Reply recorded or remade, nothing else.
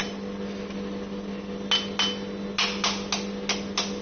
recorded